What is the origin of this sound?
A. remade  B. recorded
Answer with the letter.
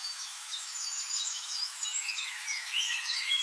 A